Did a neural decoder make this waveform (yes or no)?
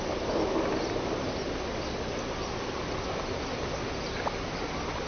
no